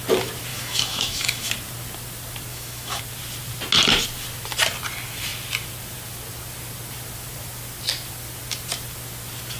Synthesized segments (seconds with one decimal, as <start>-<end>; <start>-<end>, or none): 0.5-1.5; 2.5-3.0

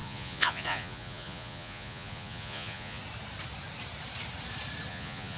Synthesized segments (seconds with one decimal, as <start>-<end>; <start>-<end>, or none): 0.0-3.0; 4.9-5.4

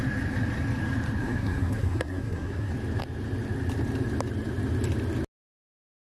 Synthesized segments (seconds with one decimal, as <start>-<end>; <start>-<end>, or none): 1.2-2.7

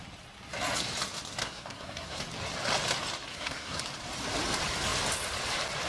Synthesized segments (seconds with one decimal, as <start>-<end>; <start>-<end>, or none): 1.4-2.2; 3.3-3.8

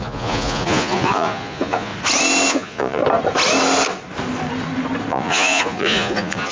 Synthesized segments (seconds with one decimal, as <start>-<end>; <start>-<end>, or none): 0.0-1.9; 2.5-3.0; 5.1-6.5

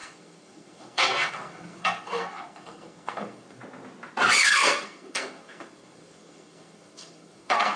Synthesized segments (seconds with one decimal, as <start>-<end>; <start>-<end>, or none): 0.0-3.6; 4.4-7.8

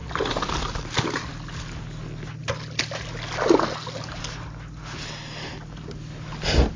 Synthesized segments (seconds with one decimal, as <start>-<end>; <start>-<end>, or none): none